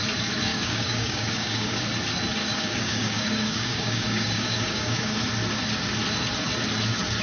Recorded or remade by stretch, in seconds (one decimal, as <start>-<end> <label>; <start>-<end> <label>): 0.0-0.5 recorded; 0.5-1.8 remade; 1.8-2.4 recorded; 2.4-5.2 remade; 5.2-7.2 recorded